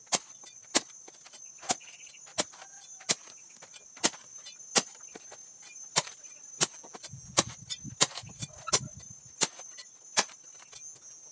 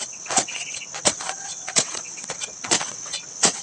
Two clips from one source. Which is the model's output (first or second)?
second